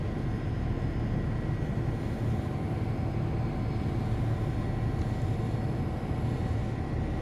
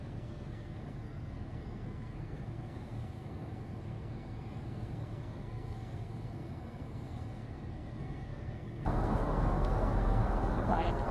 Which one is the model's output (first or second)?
second